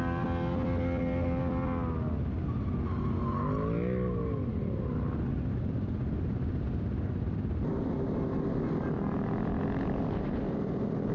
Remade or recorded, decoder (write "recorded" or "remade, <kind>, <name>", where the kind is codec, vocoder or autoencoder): recorded